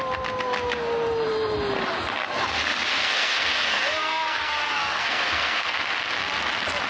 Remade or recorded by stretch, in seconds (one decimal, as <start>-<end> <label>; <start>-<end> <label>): 0.0-2.9 recorded; 2.9-5.8 remade; 5.8-6.9 recorded